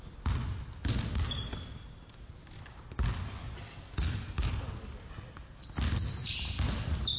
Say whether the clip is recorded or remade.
recorded